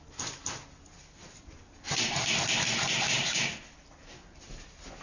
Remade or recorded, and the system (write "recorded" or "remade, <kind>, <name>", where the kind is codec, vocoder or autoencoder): recorded